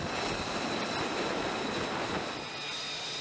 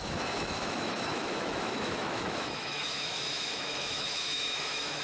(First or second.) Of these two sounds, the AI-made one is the second